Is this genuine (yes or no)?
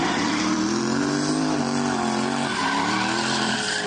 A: no